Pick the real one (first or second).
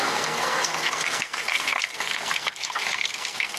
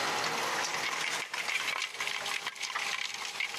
second